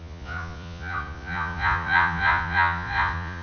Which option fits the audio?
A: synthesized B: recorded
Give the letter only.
A